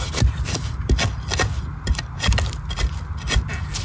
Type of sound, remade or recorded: recorded